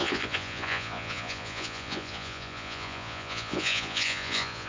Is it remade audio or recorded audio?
remade